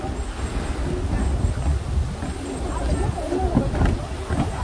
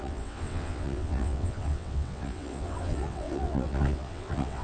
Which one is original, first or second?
first